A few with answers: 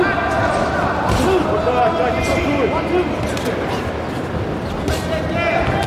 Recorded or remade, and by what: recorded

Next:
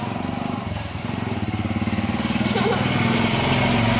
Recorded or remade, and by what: recorded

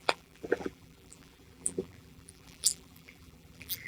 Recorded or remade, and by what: remade, vocoder, BigVGAN v2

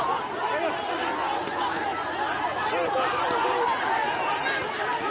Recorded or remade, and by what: recorded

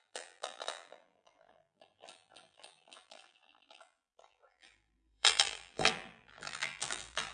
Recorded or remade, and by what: remade, vocoder, BigVGAN v2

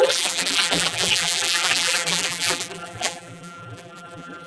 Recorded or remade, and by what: remade, vocoder, BigVGAN v2